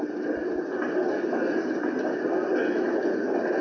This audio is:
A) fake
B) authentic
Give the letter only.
B